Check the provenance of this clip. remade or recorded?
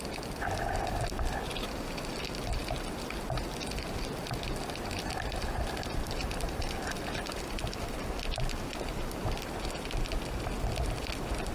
recorded